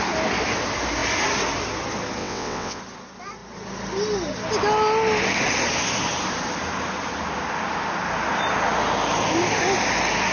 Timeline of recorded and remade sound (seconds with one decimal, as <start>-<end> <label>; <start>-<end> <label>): 0.0-2.2 recorded; 2.2-2.8 remade; 2.8-10.3 recorded